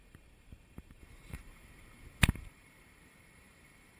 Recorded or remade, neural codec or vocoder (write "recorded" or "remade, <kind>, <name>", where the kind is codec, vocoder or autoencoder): remade, vocoder, BigVGAN v2